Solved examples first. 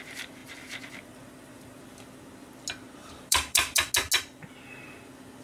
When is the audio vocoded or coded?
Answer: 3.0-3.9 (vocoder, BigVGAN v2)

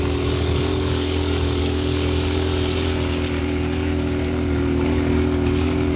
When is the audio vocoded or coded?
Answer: 0.0-2.5 (codec, DAC); 3.4-6.0

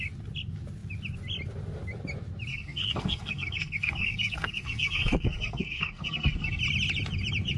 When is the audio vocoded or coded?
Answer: 2.5-6.6 (codec, SNAC)

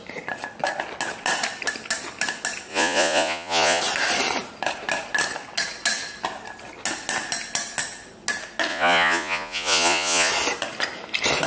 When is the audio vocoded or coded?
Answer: 2.7-3.8 (vocoder, Vocos); 8.7-10.3